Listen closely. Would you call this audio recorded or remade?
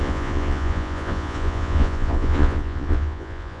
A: remade